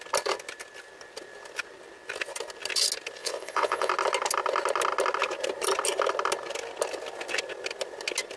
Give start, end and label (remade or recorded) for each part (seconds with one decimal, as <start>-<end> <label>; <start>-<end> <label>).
0.0-3.2 recorded; 3.2-3.9 remade; 3.9-8.4 recorded